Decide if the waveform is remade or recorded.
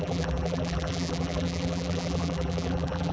remade